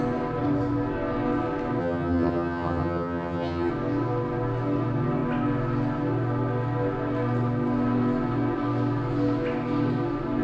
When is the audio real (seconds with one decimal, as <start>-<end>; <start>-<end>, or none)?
0.0-1.8; 3.7-10.4